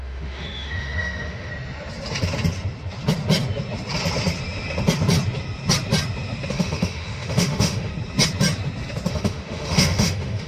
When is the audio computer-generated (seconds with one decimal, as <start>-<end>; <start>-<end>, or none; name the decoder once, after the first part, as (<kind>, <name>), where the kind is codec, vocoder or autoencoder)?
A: 0.0-1.5 (autoencoder, DAC-VAE); 6.5-7.9; 9.1-10.5